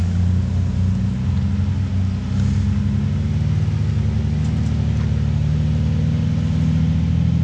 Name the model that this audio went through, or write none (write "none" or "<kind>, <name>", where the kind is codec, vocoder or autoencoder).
none